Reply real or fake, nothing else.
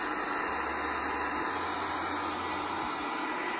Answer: real